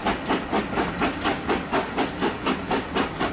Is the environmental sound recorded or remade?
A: recorded